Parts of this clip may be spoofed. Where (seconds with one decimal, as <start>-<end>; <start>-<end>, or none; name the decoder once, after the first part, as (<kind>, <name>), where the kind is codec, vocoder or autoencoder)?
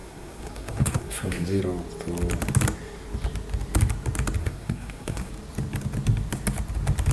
0.0-1.6 (codec, SNAC); 4.4-5.3